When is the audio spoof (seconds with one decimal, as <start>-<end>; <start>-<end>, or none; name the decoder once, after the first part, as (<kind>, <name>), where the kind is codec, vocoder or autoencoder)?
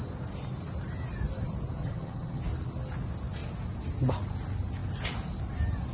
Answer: 1.8-2.4 (vocoder, HiFi-GAN)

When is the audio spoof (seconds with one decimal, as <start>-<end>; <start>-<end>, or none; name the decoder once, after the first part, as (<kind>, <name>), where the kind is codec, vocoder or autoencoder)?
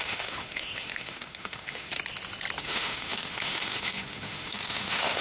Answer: 0.0-1.9 (autoencoder, DAC-VAE); 2.6-5.2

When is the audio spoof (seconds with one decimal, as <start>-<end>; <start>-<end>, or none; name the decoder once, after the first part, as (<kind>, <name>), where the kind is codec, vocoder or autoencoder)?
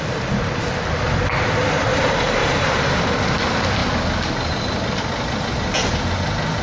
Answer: 2.4-3.0 (vocoder, BigVGAN v2)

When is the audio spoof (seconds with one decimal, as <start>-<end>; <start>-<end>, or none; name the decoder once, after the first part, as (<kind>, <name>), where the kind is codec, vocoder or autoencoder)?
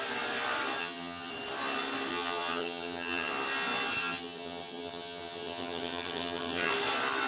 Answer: 0.8-1.3 (vocoder, HiFi-GAN); 2.1-3.3; 4.0-6.7